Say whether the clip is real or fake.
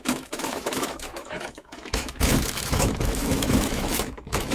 fake